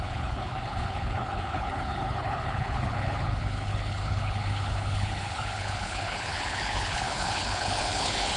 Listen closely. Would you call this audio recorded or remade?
remade